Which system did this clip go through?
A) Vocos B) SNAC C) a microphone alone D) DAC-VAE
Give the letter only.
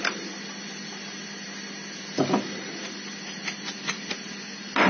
C